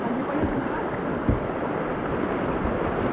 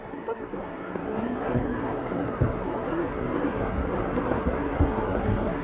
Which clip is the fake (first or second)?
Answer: second